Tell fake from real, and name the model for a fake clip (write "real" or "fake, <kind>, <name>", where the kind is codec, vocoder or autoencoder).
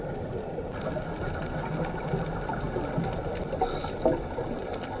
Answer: real